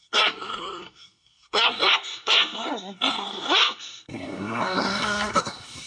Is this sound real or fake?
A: fake